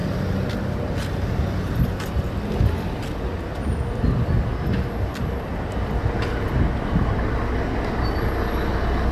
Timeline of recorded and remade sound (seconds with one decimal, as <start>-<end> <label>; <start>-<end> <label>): 0.0-9.1 recorded